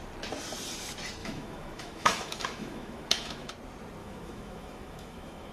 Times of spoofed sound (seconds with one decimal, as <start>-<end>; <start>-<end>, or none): 1.2-3.5; 4.0-5.5